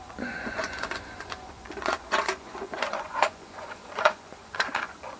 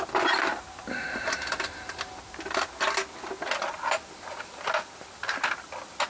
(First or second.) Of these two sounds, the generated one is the first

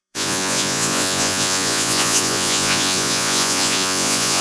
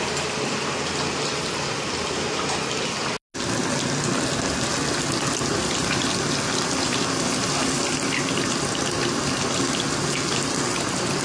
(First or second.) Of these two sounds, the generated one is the first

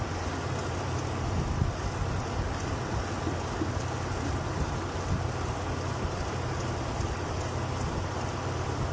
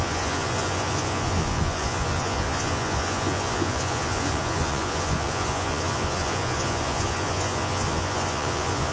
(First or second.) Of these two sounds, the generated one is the second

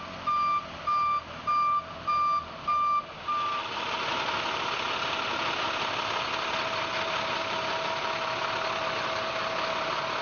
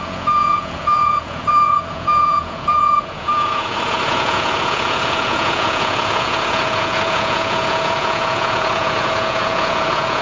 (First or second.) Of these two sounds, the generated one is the second